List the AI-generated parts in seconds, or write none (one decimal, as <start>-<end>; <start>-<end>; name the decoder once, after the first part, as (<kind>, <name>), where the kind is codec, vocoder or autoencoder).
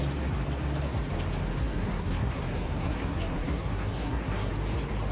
1.6-4.5 (codec, SNAC)